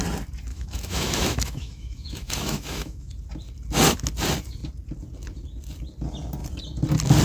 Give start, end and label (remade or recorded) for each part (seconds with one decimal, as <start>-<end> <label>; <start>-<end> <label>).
0.0-0.5 recorded; 0.5-3.1 remade; 3.1-7.2 recorded